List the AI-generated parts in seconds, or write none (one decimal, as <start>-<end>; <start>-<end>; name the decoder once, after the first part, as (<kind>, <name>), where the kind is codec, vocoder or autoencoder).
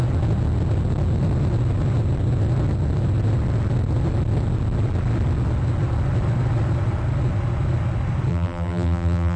8.3-9.4 (vocoder, BigVGAN v2)